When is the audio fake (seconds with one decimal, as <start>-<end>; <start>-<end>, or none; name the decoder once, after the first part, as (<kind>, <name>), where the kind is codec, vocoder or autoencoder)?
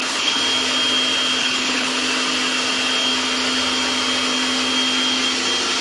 0.0-0.4 (codec, HILCodec); 1.4-1.9